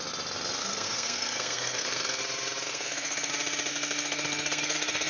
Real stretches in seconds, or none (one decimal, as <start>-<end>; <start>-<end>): 0.0-0.6; 2.2-2.7; 3.3-3.7